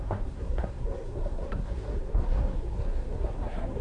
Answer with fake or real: fake